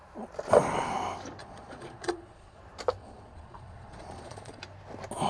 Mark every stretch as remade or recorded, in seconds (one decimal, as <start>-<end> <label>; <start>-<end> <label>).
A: 0.0-1.4 recorded; 1.4-2.6 remade; 2.6-3.0 recorded; 3.0-4.6 remade; 4.6-5.3 recorded